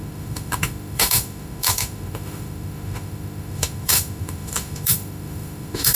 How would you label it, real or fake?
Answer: fake